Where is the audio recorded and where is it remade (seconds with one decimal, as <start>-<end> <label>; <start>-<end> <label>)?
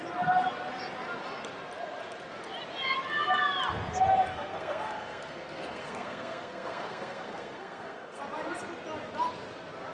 0.0-4.3 recorded; 4.3-8.2 remade; 8.2-9.9 recorded